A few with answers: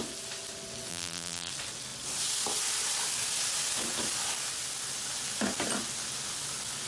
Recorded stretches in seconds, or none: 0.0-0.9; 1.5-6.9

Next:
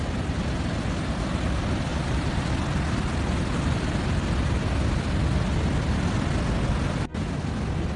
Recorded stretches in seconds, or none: 0.0-1.9; 2.4-8.0